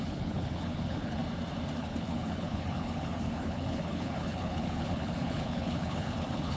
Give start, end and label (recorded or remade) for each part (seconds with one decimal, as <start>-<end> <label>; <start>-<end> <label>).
0.0-1.2 remade; 1.2-1.8 recorded; 1.8-6.6 remade